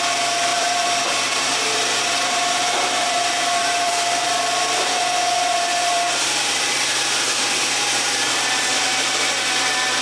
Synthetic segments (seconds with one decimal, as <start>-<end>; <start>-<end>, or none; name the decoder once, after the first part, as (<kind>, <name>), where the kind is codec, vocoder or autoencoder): 0.5-4.1 (vocoder, BigVGAN v2); 5.7-7.2